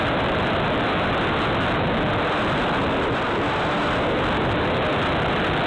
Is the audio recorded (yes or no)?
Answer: yes